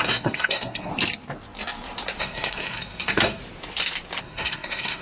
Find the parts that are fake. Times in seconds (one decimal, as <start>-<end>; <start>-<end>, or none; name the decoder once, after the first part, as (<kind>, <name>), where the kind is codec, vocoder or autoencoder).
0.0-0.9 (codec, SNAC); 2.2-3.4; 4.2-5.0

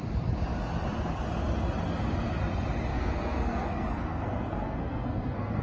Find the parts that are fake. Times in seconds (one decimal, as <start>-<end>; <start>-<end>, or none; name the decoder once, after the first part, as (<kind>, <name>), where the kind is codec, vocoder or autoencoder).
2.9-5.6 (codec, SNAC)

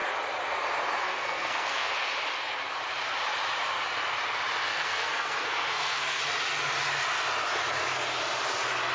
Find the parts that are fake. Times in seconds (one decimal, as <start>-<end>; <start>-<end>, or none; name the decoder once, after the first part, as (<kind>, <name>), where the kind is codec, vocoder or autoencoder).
1.0-1.9 (codec, SNAC); 4.7-6.2

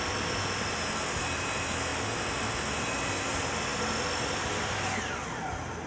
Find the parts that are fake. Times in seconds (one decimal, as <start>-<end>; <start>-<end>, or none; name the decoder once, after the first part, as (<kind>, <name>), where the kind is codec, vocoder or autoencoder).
none

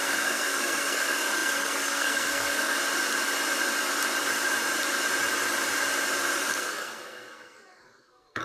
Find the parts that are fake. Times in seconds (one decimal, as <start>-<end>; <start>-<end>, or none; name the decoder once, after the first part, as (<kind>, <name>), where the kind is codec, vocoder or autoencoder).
0.0-2.8 (codec, SNAC); 6.5-8.4

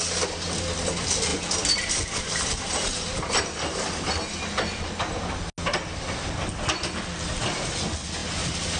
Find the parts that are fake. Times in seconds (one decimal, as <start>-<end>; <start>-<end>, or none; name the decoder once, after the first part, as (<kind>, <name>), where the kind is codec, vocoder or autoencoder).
none

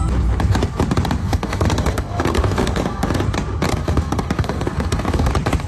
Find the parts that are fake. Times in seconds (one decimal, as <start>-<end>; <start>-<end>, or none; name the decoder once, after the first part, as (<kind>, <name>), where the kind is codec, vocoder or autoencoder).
1.2-3.2 (codec, SNAC); 3.7-5.3